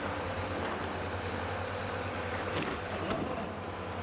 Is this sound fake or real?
real